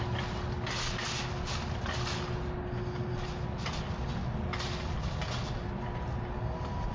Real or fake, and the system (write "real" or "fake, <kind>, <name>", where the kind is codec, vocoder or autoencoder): real